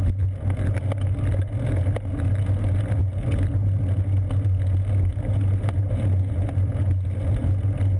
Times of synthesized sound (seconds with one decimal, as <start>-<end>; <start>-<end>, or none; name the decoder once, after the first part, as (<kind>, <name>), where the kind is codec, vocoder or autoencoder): 5.1-6.7 (vocoder, BigVGAN v2)